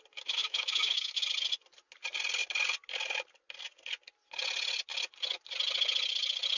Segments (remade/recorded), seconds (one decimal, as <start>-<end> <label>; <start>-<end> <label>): 0.0-0.4 recorded; 0.4-1.2 remade; 1.2-6.6 recorded